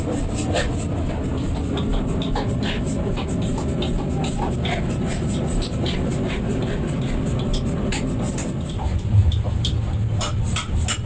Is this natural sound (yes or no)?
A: yes